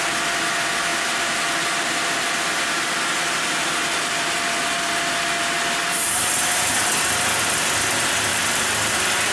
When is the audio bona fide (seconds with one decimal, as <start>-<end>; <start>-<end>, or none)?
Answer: 0.0-5.8; 6.7-8.3; 8.9-9.3